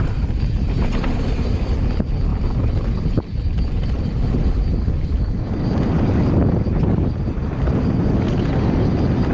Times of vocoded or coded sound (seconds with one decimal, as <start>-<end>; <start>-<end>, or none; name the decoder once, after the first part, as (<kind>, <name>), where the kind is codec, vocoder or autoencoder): none